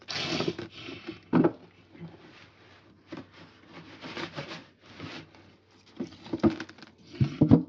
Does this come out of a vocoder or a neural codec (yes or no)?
no